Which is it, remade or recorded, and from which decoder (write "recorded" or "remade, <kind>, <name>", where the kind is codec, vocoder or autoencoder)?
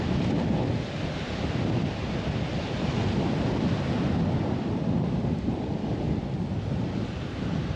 recorded